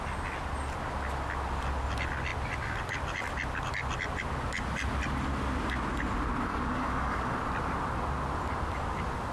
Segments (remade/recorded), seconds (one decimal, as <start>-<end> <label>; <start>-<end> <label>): 0.0-6.5 recorded; 6.5-7.3 remade; 7.3-9.3 recorded